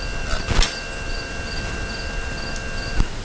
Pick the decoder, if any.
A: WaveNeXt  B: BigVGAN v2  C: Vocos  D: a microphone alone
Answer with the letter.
D